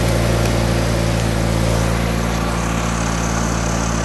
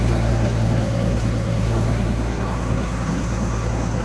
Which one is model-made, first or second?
second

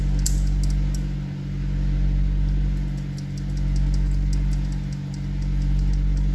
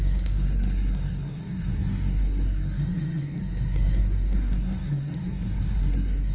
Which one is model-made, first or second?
second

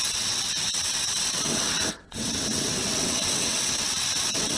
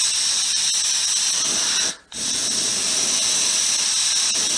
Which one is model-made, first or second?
first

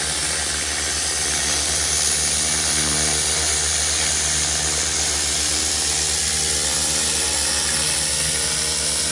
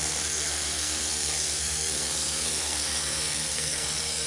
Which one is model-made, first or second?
second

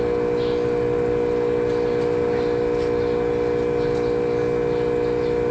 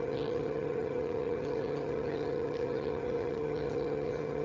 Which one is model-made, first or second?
second